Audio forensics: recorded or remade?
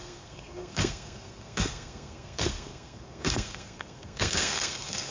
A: remade